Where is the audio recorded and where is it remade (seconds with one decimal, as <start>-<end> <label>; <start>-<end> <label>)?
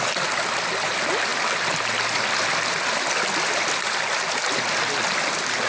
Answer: 0.0-5.7 recorded